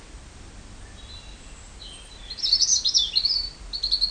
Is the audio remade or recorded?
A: recorded